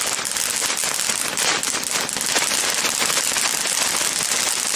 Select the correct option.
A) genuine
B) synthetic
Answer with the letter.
A